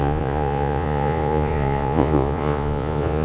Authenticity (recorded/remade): remade